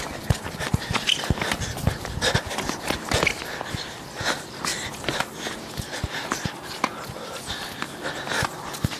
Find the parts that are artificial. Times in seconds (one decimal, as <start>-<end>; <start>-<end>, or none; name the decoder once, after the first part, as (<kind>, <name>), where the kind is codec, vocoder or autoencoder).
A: none